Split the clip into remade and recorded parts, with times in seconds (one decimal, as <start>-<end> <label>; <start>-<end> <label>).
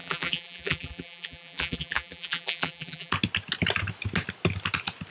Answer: 0.0-3.1 remade; 3.1-5.1 recorded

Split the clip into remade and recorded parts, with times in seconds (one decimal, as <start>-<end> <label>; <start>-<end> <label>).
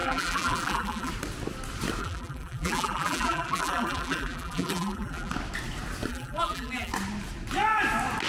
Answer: 0.0-1.1 remade; 1.1-2.0 recorded; 2.0-5.3 remade; 5.3-6.1 recorded; 6.1-6.9 remade; 6.9-8.3 recorded